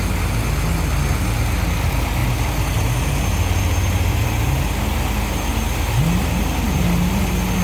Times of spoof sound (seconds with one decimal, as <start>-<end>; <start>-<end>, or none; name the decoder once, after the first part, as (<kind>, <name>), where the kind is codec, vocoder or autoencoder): none